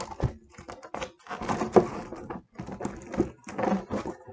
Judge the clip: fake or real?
real